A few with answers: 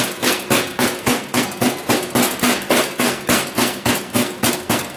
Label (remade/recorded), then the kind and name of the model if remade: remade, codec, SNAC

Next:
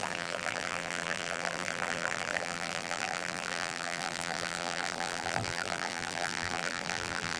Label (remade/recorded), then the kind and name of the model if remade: remade, vocoder, BigVGAN v2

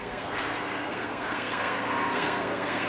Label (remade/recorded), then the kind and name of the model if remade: remade, codec, SNAC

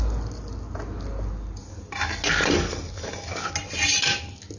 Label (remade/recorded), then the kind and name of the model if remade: recorded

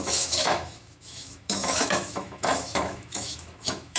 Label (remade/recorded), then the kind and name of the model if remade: remade, autoencoder, DAC-VAE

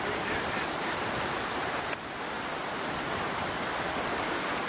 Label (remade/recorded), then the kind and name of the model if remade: recorded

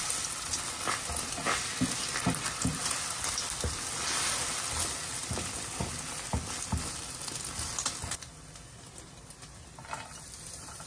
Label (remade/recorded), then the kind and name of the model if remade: recorded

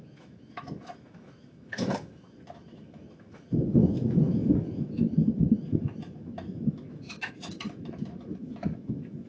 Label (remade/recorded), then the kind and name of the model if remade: remade, autoencoder, DAC-VAE